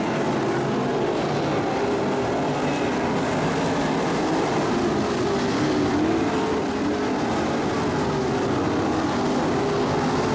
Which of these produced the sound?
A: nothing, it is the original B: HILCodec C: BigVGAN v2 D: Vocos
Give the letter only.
A